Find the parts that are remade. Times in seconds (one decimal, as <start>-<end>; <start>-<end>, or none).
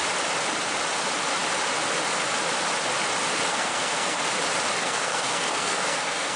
3.5-4.2; 4.8-6.4